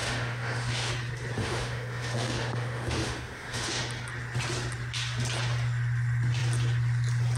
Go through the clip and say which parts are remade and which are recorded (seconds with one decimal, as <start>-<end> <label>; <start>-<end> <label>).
0.0-0.9 remade; 0.9-1.4 recorded; 1.4-3.8 remade; 3.8-7.4 recorded